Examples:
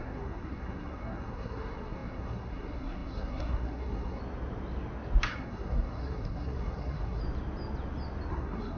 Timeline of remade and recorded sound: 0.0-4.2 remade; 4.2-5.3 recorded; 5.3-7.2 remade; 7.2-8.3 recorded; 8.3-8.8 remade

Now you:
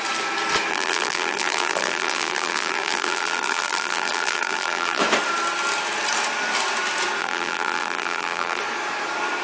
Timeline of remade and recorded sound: 0.0-0.7 recorded; 0.7-5.0 remade; 5.0-7.2 recorded; 7.2-8.6 remade; 8.6-9.4 recorded

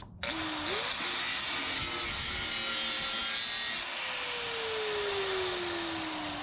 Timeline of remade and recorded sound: 0.0-6.4 recorded

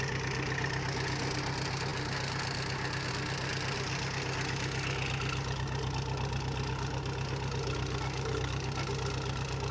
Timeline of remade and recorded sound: 0.0-9.7 recorded

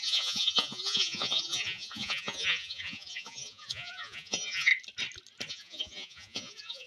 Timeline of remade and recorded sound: 0.0-4.7 remade; 4.7-5.5 recorded; 5.5-6.9 remade

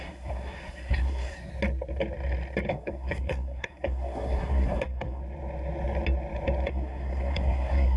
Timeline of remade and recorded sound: 0.0-1.5 remade; 1.5-2.7 recorded; 2.7-5.2 remade; 5.2-6.7 recorded; 6.7-8.0 remade

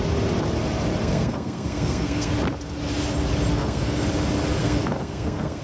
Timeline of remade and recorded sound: 0.0-1.0 recorded; 1.0-2.3 remade; 2.3-3.5 recorded; 3.5-4.1 remade; 4.1-4.6 recorded; 4.6-5.6 remade